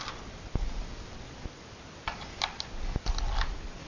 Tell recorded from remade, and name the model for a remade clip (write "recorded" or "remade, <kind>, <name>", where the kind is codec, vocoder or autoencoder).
recorded